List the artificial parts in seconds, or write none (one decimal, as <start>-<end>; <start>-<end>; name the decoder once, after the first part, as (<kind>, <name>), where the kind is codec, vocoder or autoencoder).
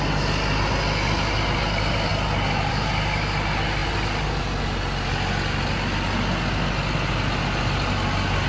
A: none